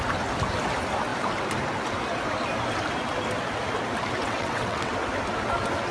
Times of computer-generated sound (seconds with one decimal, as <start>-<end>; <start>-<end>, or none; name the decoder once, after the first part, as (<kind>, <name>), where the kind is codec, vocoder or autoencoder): 4.2-4.9 (vocoder, WaveNeXt)